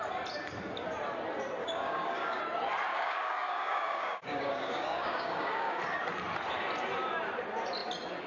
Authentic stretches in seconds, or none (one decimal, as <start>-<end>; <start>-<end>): 0.0-1.6; 2.4-2.9; 5.8-8.3